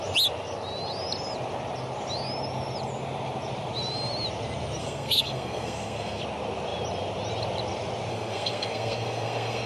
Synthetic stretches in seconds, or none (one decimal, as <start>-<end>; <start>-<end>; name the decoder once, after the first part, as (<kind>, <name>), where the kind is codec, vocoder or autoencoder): 4.8-6.2 (codec, SNAC); 8.1-9.7